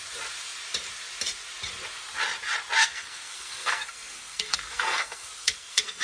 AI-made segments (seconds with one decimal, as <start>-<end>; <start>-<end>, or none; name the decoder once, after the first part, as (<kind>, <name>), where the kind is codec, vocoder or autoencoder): 2.8-6.0 (codec, SNAC)